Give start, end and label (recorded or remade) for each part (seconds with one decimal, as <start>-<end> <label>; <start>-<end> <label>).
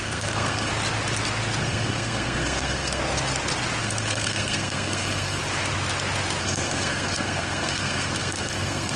0.0-0.7 remade; 0.7-1.6 recorded; 1.6-3.0 remade; 3.0-3.8 recorded; 3.8-5.4 remade; 5.4-6.4 recorded; 6.4-9.0 remade